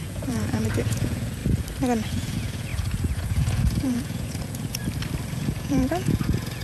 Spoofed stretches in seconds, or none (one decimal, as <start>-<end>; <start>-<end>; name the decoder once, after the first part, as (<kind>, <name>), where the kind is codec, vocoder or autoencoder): 0.0-1.4 (vocoder, Vocos); 2.1-4.8; 5.3-6.6